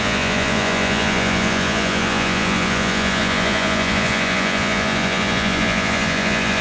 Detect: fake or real fake